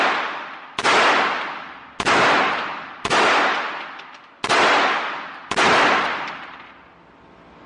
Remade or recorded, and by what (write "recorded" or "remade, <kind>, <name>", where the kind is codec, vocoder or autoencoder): recorded